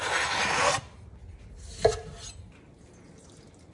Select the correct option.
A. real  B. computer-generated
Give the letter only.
A